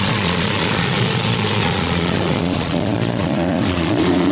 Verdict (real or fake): fake